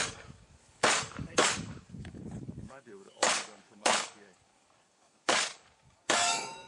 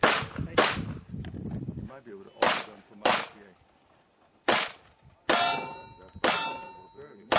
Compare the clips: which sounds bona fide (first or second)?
second